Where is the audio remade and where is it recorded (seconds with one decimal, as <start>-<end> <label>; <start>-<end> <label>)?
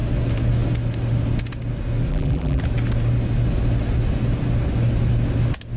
0.0-2.1 recorded; 2.1-2.6 remade; 2.6-5.8 recorded